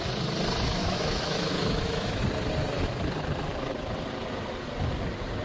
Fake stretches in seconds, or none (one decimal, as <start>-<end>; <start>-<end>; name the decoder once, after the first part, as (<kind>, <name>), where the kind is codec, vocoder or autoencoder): 0.8-2.2 (autoencoder, DAC-VAE)